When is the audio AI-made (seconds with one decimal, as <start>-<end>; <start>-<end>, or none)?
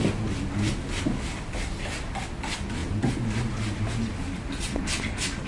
none